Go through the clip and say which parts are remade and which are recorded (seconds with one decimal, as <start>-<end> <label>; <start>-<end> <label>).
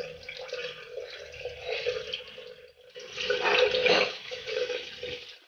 0.0-3.8 recorded; 3.8-4.9 remade; 4.9-5.5 recorded